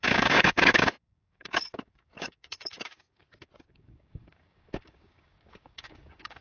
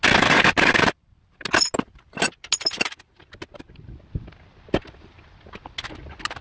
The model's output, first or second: first